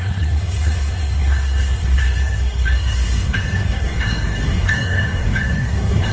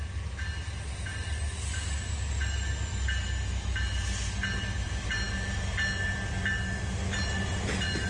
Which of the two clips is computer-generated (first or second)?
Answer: first